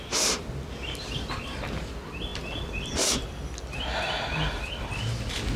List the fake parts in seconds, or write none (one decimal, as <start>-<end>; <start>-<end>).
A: none